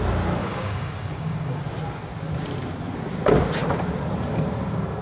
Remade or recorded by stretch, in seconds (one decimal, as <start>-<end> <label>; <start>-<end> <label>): 0.0-0.4 recorded; 0.4-1.6 remade; 1.6-5.0 recorded